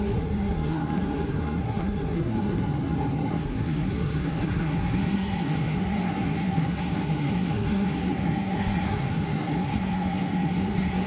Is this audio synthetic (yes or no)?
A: yes